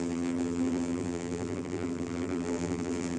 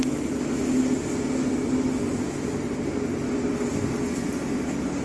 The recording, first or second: second